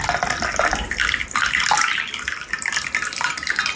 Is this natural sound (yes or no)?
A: yes